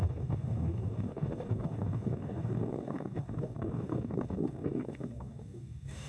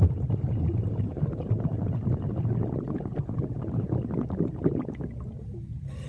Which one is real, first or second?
second